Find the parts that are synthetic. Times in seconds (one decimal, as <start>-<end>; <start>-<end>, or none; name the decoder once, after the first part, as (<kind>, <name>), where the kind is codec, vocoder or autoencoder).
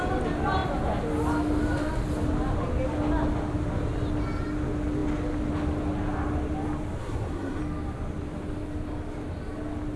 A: 7.0-7.6 (codec, SNAC)